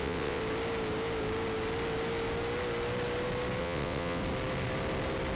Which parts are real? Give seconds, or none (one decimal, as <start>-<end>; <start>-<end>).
0.4-3.6; 4.2-5.4